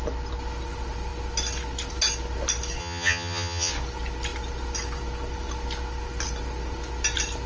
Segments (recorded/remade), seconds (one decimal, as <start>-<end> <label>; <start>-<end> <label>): 0.0-2.8 recorded; 2.8-3.7 remade; 3.7-7.5 recorded